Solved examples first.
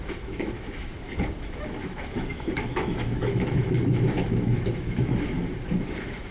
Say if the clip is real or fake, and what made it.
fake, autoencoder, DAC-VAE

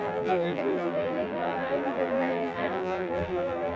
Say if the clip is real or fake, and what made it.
fake, vocoder, BigVGAN v2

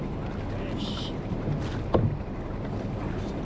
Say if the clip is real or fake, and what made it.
real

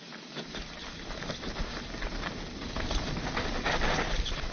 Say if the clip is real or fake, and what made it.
real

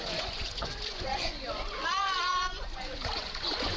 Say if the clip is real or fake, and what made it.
fake, vocoder, Vocos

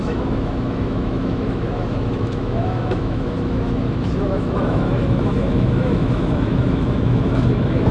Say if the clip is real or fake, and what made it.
fake, autoencoder, DAC-VAE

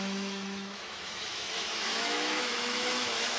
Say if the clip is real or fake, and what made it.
fake, autoencoder, DAC-VAE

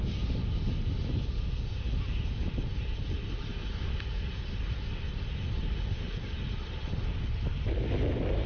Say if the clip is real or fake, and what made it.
real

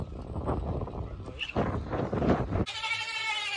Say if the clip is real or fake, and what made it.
real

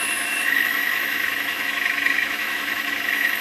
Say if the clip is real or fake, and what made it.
fake, autoencoder, DAC-VAE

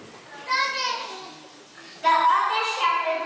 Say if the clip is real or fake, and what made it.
real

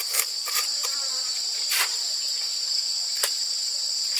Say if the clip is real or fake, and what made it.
fake, vocoder, BigVGAN v2